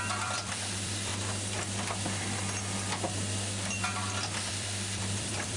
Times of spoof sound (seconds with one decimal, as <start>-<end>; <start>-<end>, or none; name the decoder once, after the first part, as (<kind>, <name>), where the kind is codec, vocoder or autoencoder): 0.0-1.1 (vocoder, BigVGAN v2); 4.5-5.6